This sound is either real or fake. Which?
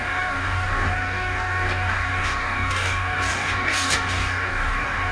fake